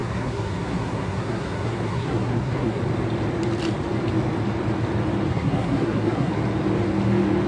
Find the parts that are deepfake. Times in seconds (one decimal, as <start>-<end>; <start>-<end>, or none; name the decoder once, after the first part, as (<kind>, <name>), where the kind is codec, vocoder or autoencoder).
0.0-2.8 (codec, SNAC); 5.3-6.3